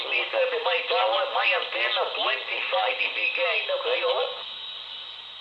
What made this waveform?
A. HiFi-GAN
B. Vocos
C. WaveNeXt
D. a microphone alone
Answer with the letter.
D